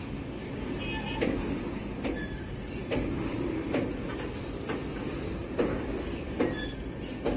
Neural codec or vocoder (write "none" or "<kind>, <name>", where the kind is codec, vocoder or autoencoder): none